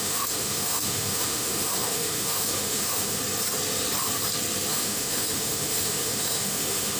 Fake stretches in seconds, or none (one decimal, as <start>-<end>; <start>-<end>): 0.0-3.2; 4.7-7.0